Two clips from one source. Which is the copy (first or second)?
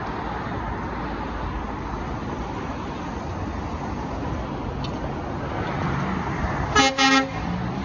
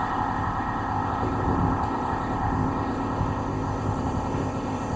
second